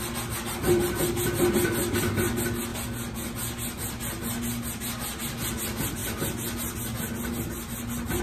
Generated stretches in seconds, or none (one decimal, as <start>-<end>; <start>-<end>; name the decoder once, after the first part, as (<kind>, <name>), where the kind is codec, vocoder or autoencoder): none